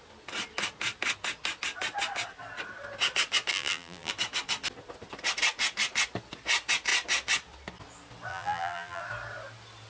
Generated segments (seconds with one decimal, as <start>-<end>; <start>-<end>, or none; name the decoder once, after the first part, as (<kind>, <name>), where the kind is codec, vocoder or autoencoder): 3.5-4.1 (vocoder, BigVGAN v2); 8.3-9.0